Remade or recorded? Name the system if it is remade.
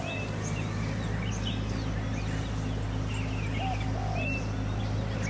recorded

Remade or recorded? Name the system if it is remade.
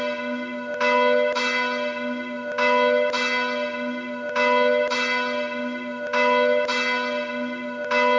recorded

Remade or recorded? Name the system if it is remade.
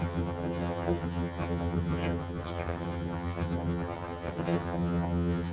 remade, vocoder, HiFi-GAN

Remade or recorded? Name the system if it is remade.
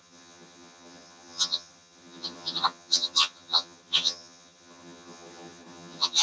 remade, vocoder, HiFi-GAN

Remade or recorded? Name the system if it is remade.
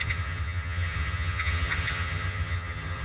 remade, vocoder, HiFi-GAN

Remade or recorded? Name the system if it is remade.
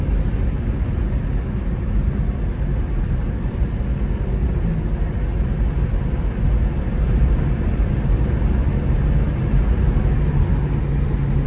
recorded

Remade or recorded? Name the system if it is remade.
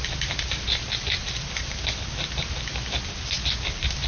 recorded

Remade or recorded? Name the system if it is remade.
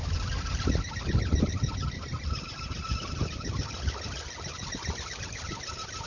recorded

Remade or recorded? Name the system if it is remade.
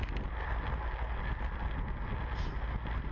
recorded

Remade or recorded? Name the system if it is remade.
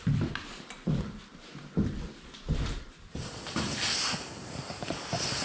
recorded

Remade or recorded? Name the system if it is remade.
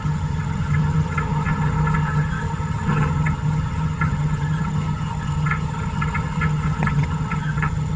remade, vocoder, HiFi-GAN